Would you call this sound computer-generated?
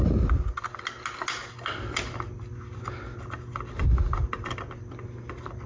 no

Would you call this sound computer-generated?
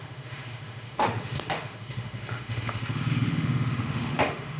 yes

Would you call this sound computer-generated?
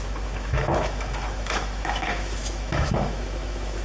yes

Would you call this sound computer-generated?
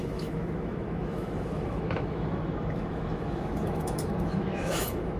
yes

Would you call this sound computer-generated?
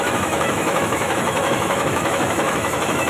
yes